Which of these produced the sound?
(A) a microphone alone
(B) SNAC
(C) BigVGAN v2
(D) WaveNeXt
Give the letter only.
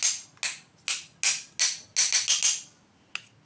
A